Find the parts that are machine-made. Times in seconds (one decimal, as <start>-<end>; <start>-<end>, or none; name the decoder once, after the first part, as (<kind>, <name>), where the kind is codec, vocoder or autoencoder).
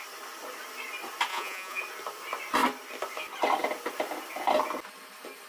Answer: 1.3-1.8 (vocoder, Vocos)